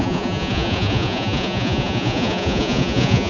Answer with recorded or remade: remade